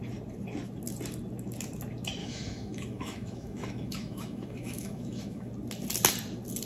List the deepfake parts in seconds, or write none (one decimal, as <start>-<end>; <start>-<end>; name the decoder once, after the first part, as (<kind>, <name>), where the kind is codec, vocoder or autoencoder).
2.2-5.5 (autoencoder, DAC-VAE)